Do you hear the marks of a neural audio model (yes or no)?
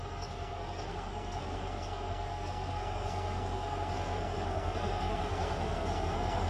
yes